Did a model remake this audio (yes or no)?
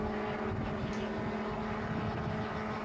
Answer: no